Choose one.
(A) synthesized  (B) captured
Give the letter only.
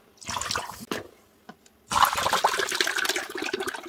B